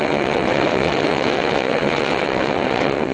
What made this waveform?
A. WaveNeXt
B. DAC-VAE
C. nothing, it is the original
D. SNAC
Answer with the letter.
A